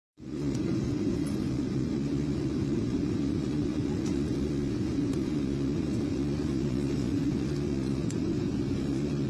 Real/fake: fake